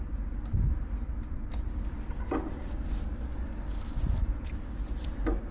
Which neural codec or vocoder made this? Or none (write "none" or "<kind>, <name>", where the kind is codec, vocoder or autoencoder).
none